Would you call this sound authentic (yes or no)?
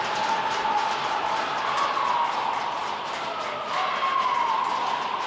yes